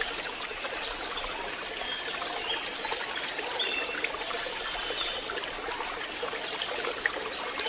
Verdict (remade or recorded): recorded